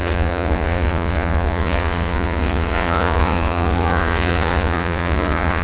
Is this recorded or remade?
remade